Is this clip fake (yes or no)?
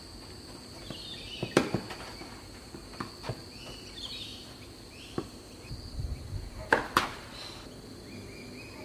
no